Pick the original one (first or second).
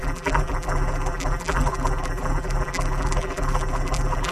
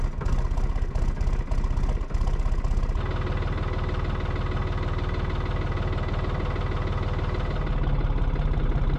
second